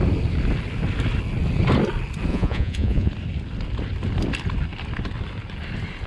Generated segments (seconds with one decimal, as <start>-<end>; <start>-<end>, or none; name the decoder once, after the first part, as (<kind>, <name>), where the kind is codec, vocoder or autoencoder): 2.3-3.1 (vocoder, Vocos)